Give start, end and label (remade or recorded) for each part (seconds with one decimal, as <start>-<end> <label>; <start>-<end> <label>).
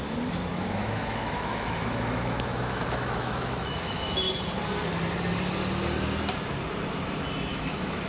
0.0-0.5 recorded; 0.5-4.3 remade; 4.3-7.5 recorded; 7.5-8.1 remade